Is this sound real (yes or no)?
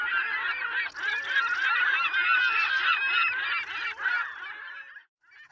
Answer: yes